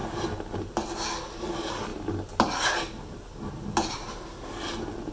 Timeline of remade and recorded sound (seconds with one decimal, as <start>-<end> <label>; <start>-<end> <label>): 0.0-5.1 recorded